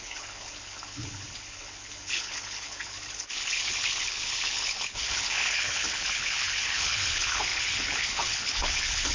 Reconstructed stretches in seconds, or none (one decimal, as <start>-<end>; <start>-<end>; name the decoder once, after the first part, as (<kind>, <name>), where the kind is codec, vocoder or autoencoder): 0.0-9.1 (codec, HILCodec)